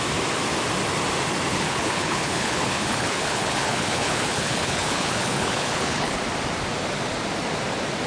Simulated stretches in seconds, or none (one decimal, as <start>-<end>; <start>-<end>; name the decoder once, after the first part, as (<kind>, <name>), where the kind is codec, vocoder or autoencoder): 1.5-6.2 (codec, HILCodec)